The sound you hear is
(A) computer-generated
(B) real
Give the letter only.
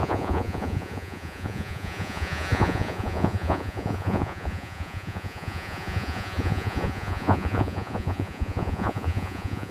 A